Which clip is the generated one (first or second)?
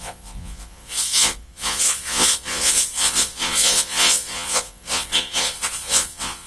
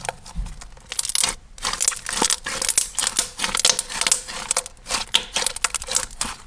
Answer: first